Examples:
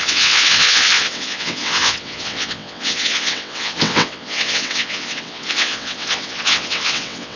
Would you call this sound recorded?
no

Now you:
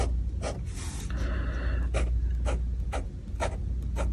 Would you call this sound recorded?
yes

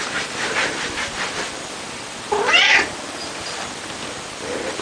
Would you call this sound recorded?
yes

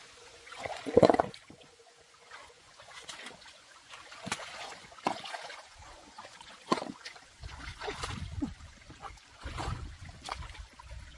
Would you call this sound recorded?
no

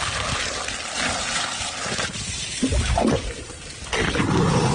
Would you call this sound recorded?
yes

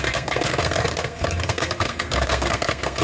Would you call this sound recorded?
no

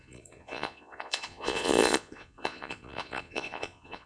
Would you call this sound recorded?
no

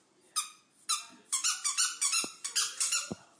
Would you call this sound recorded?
yes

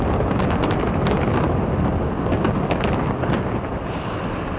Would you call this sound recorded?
yes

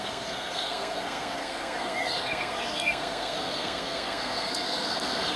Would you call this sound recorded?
no